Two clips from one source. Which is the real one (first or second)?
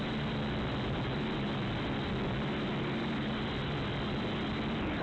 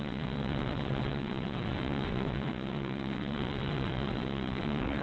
first